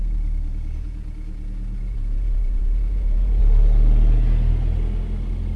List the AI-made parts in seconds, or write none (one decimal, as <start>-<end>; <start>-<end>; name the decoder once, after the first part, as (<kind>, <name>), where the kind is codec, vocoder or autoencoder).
0.0-3.4 (vocoder, Vocos)